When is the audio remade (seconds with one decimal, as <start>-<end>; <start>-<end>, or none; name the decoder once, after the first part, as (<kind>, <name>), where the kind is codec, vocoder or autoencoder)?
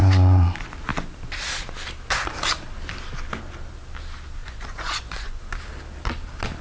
4.4-5.4 (vocoder, Vocos)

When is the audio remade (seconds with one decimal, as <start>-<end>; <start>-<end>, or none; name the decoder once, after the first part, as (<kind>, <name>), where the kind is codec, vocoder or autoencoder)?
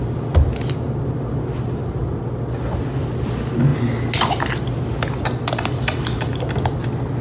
none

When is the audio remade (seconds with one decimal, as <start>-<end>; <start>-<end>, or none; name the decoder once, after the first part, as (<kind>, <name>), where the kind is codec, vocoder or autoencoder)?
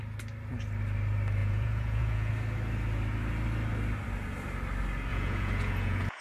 1.4-2.3 (vocoder, Vocos); 5.1-6.2